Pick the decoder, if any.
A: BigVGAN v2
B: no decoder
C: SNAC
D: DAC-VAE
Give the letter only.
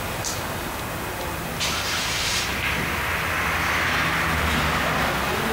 B